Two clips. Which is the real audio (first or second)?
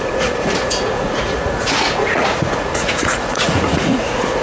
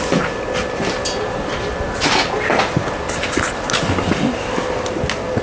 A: second